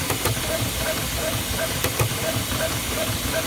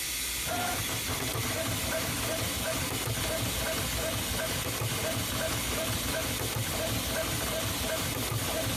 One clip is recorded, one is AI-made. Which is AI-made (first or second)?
first